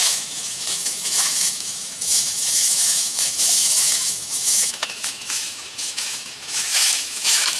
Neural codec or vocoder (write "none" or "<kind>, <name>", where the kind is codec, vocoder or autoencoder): autoencoder, DAC-VAE